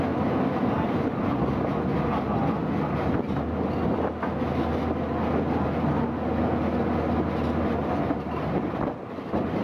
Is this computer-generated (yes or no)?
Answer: no